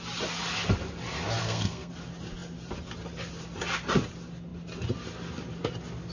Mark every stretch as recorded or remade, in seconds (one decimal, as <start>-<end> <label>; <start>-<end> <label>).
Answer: 0.0-1.4 recorded; 1.4-1.9 remade; 1.9-6.1 recorded